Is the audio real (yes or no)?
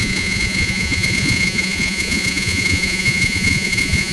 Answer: no